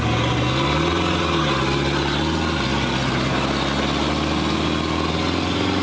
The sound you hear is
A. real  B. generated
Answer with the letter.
A